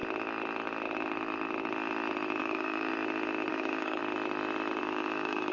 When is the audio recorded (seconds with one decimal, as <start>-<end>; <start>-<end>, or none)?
0.0-2.4; 2.9-3.5; 4.0-4.8